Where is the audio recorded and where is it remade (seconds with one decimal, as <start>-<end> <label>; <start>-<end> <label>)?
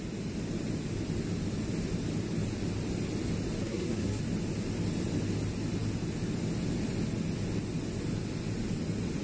0.0-3.6 recorded; 3.6-4.2 remade; 4.2-9.2 recorded